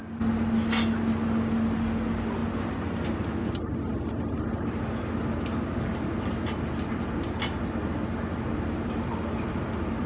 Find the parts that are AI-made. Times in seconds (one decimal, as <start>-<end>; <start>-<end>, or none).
none